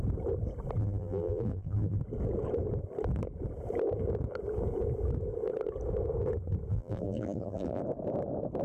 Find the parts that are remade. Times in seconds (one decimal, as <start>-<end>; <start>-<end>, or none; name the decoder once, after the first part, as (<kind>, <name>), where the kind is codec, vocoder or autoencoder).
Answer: 0.8-2.0 (vocoder, BigVGAN v2); 6.7-7.8